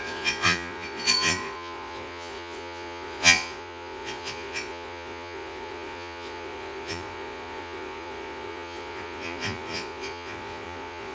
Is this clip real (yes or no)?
no